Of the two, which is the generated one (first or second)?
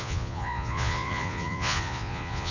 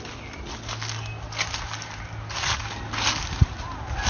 first